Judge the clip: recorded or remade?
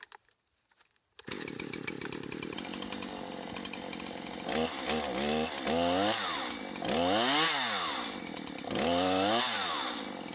recorded